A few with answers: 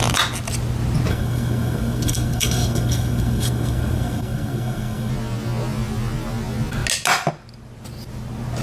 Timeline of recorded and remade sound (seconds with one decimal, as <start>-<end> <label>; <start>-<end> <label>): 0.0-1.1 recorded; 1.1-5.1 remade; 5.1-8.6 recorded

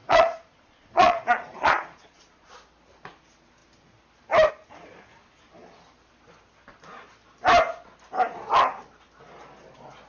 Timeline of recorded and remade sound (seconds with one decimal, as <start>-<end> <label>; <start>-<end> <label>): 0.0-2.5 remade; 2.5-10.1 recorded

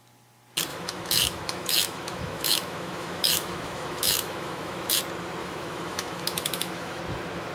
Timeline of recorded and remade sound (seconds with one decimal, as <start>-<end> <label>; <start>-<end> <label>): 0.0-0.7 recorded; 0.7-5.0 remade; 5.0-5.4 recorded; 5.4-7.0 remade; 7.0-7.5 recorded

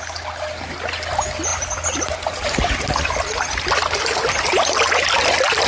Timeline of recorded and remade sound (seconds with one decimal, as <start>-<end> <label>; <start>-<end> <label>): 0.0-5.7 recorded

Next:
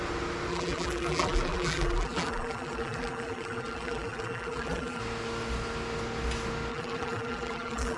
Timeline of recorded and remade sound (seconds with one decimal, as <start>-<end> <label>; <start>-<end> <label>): 0.0-0.5 recorded; 0.5-5.0 remade; 5.0-6.7 recorded; 6.7-8.0 remade

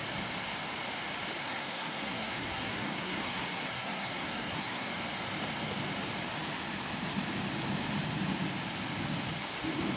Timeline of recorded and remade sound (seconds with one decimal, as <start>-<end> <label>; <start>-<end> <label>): 0.0-1.4 recorded; 1.4-4.9 remade; 4.9-10.0 recorded

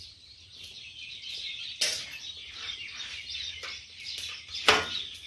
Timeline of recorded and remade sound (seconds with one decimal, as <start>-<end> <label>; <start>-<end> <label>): 0.0-2.4 recorded; 2.4-3.1 remade; 3.1-5.3 recorded

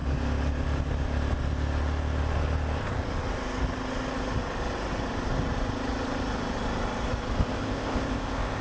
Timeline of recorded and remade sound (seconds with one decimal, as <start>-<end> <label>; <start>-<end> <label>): 0.0-7.4 recorded; 7.4-8.6 remade